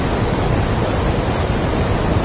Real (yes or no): yes